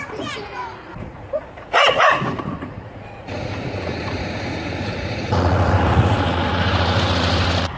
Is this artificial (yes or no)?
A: yes